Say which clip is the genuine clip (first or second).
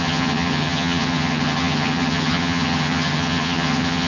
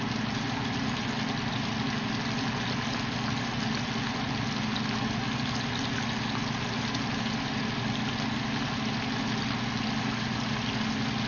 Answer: second